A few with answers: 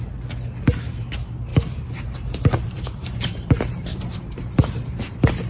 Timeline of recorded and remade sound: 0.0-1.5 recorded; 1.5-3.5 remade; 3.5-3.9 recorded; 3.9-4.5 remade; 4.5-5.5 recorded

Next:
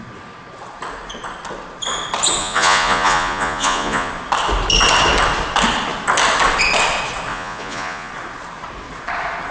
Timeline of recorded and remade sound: 0.0-2.4 recorded; 2.4-4.1 remade; 4.1-7.3 recorded; 7.3-8.1 remade; 8.1-9.5 recorded

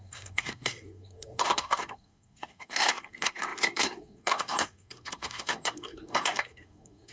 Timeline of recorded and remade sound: 0.0-7.1 remade

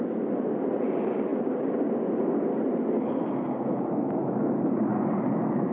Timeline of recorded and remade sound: 0.0-5.7 recorded

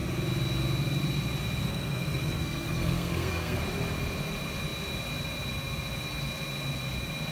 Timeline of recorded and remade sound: 0.0-1.7 recorded; 1.7-3.6 remade; 3.6-7.3 recorded

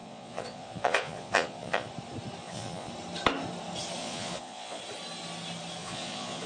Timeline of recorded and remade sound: 0.0-1.9 remade; 1.9-2.4 recorded; 2.4-2.9 remade; 2.9-4.0 recorded; 4.0-4.8 remade; 4.8-5.8 recorded; 5.8-6.5 remade

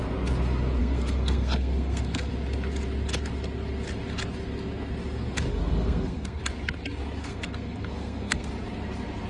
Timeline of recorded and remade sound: 0.0-0.8 recorded; 0.8-2.3 remade; 2.3-5.5 recorded; 5.5-6.4 remade; 6.4-7.2 recorded; 7.2-8.5 remade; 8.5-9.3 recorded

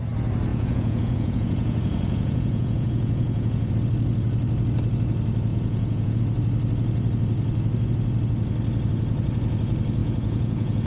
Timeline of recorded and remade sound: 0.0-0.5 recorded; 0.5-3.7 remade; 3.7-5.5 recorded; 5.5-6.2 remade; 6.2-10.0 recorded; 10.0-10.9 remade